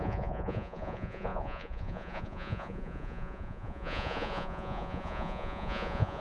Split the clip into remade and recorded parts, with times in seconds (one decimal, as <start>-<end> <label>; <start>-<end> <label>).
0.0-6.2 remade

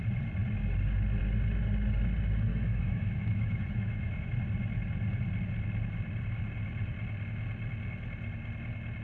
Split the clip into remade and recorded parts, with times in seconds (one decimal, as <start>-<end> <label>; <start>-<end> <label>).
0.0-2.5 recorded; 2.5-4.3 remade; 4.3-9.0 recorded

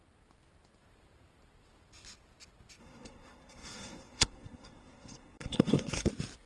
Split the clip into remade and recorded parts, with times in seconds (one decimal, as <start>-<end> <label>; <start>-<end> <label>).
0.0-2.8 recorded; 2.8-6.1 remade; 6.1-6.5 recorded

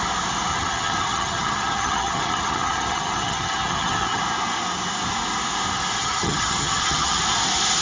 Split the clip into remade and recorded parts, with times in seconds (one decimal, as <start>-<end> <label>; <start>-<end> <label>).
0.0-0.5 recorded; 0.5-4.2 remade; 4.2-6.0 recorded; 6.0-7.2 remade; 7.2-7.8 recorded

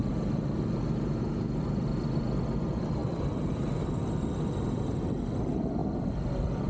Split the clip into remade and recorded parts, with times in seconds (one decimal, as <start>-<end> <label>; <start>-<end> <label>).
0.0-6.7 recorded

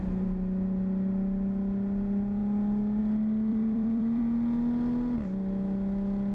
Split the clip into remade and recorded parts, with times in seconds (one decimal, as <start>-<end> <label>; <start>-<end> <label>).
0.0-3.5 recorded; 3.5-4.2 remade; 4.2-6.3 recorded